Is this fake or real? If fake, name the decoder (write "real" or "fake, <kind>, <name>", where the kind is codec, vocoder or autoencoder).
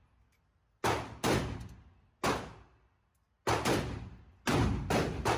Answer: real